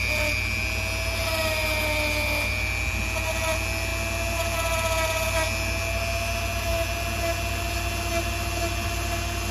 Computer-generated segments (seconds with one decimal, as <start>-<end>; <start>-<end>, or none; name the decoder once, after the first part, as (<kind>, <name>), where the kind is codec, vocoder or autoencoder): none